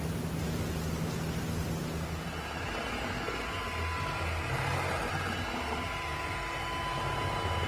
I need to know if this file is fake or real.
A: real